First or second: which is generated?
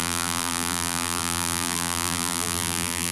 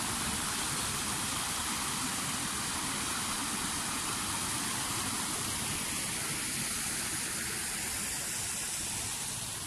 first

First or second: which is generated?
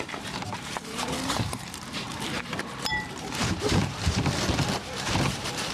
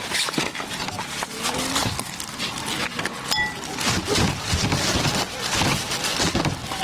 first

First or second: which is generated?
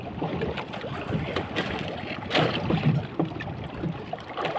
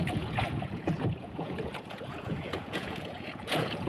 second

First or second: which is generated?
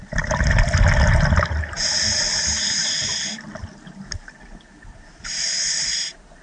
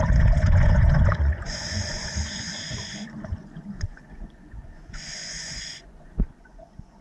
second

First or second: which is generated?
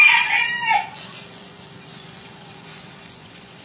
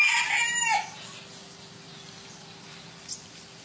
first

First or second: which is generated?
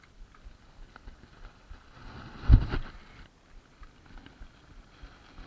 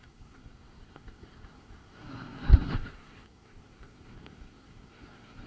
second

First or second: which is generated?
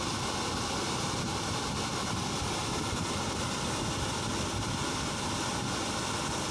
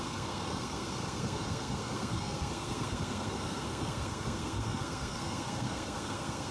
second